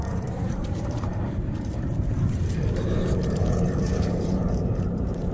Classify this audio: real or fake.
fake